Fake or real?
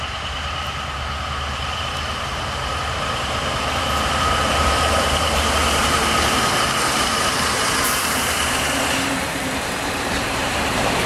fake